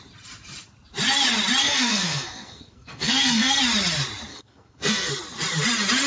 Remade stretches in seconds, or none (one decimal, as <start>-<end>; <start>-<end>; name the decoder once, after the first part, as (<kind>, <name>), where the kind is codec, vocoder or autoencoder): 1.6-3.6 (codec, SNAC); 4.3-5.1